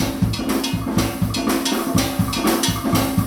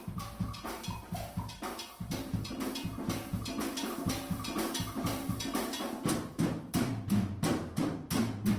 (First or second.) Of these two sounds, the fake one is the second